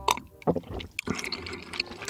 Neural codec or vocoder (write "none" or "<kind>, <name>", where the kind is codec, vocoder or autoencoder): none